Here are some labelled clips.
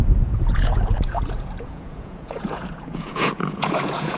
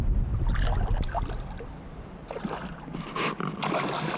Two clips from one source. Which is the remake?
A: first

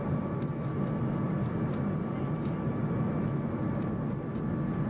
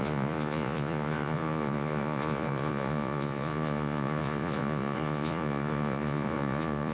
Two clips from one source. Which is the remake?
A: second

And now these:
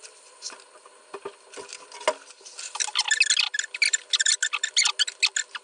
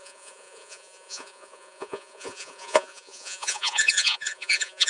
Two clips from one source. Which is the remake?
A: second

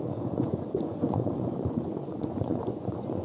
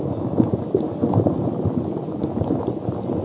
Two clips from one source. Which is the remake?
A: first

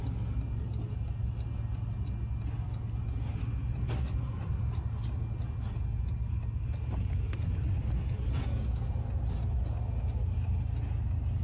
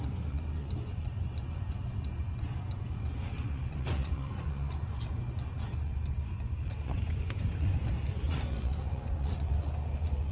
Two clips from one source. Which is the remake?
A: second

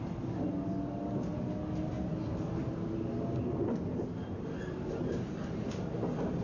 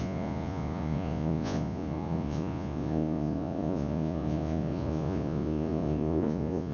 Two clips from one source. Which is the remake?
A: second